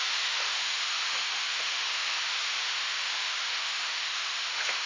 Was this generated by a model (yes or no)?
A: yes